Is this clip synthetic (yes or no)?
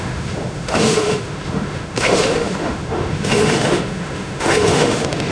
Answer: yes